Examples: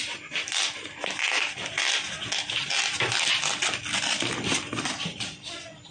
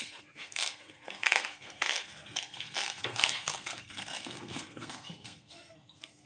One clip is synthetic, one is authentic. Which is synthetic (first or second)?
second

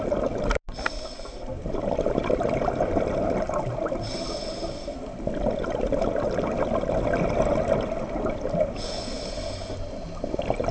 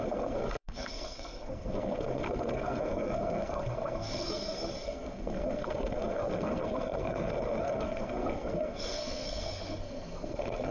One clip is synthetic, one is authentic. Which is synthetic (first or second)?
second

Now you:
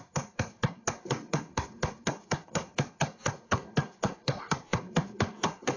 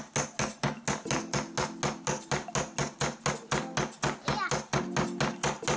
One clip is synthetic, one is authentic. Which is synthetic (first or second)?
first